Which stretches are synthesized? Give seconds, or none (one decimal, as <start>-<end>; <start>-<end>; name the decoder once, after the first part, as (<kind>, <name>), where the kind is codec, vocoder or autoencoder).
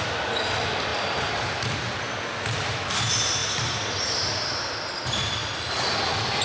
0.9-1.4 (vocoder, BigVGAN v2); 3.4-4.7